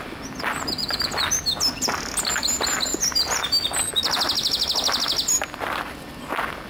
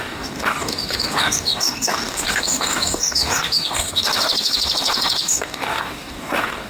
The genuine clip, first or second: first